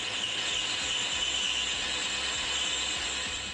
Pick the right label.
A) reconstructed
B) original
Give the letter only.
A